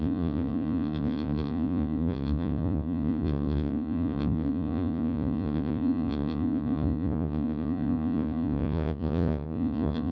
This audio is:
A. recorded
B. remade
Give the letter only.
B